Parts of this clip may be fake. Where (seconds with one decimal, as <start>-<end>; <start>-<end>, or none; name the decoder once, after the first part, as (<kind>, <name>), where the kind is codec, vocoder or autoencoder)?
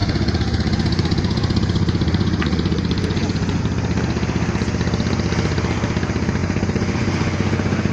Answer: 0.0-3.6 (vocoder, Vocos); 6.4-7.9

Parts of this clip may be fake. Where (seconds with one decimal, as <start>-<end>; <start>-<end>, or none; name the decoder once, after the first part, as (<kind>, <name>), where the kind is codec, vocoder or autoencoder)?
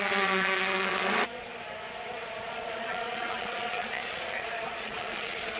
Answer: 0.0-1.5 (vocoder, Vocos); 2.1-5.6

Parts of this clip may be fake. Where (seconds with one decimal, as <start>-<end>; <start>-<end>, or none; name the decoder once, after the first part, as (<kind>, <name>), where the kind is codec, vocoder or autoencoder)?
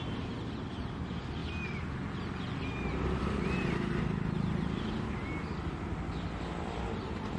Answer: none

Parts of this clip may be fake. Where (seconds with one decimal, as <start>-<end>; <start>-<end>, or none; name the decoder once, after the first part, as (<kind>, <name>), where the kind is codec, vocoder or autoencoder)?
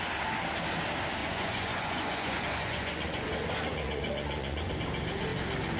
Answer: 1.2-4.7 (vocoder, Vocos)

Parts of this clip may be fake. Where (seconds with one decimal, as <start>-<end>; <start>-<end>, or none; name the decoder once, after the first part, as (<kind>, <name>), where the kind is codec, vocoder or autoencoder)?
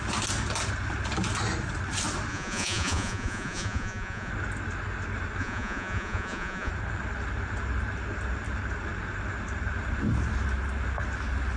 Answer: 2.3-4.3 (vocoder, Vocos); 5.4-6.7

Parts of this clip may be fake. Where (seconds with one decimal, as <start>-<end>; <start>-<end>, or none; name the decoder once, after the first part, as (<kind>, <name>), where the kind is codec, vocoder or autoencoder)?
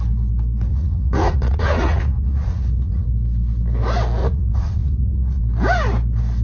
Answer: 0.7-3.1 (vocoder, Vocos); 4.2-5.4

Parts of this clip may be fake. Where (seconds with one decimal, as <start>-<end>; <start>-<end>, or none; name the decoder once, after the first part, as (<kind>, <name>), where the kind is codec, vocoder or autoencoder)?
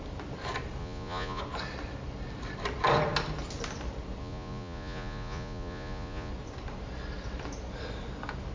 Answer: 0.8-1.4 (vocoder, Vocos); 4.2-6.3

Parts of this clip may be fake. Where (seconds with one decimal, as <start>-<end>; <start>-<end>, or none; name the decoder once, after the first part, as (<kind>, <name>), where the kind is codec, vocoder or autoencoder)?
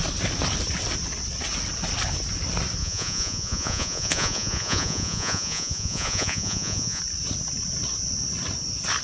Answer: 2.8-7.0 (vocoder, Vocos)